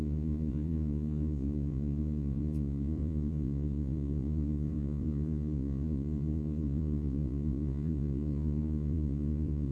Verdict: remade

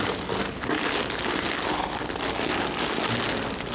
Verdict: recorded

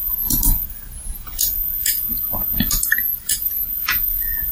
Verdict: remade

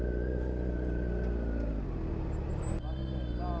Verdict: recorded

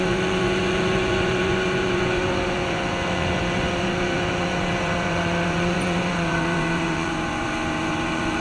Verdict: remade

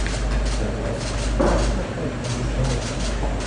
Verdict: recorded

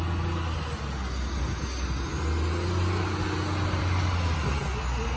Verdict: recorded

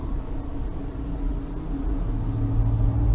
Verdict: recorded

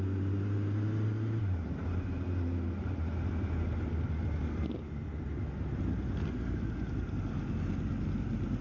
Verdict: recorded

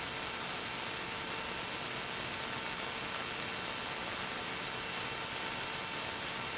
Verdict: recorded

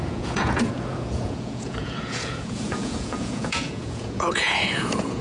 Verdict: remade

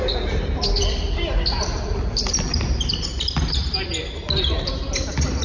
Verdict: recorded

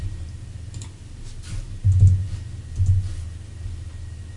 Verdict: recorded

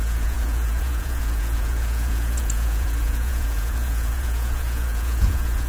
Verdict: remade